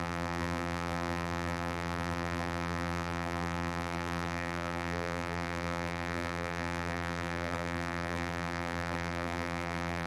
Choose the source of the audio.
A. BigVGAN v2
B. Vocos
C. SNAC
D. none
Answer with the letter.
A